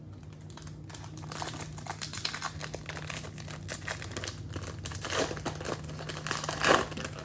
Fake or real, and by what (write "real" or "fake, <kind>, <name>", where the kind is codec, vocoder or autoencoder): real